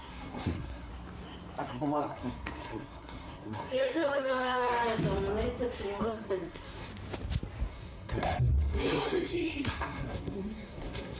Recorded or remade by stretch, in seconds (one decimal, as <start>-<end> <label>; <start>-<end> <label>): 0.0-0.9 remade; 0.9-1.7 recorded; 1.7-4.7 remade; 4.7-6.0 recorded; 6.0-6.9 remade; 6.9-7.7 recorded; 7.7-11.2 remade

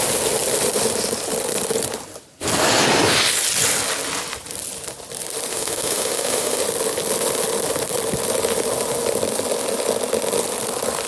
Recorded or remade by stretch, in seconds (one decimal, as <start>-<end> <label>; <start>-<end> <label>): 0.0-5.5 recorded; 5.5-6.6 remade; 6.6-11.1 recorded

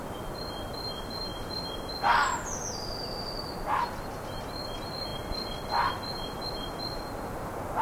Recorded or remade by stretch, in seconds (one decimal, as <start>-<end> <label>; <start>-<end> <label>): 0.0-7.8 recorded

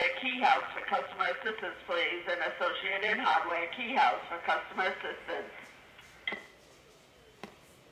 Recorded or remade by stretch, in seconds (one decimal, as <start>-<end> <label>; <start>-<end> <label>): 0.0-1.5 remade; 1.5-2.8 recorded; 2.8-3.5 remade; 3.5-7.9 recorded

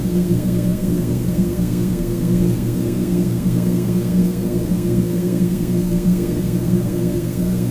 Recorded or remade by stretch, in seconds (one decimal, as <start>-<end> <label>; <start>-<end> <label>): 0.0-7.7 remade

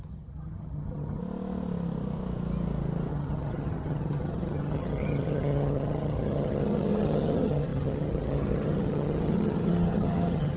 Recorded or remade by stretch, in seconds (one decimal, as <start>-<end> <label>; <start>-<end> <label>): 0.0-1.2 remade; 1.2-3.1 recorded; 3.1-10.6 remade

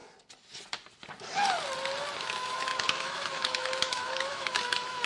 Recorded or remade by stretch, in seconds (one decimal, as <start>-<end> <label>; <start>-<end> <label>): 0.0-2.2 recorded; 2.2-5.1 remade